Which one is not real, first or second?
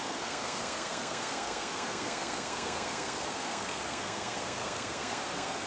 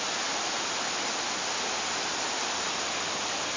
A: first